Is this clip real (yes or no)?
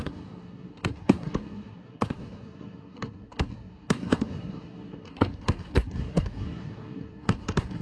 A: no